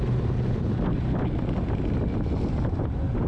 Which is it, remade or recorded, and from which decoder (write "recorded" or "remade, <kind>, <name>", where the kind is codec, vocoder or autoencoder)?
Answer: recorded